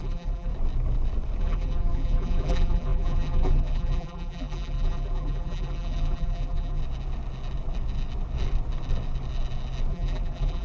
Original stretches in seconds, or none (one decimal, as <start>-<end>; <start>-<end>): 0.5-1.4; 6.8-9.9